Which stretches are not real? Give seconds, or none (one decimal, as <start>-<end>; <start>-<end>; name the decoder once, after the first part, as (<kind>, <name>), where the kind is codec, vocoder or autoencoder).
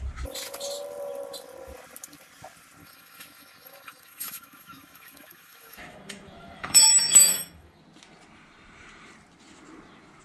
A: 2.8-7.8 (autoencoder, DAC-VAE)